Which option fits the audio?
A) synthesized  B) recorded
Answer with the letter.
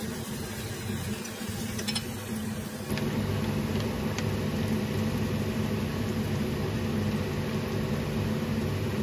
B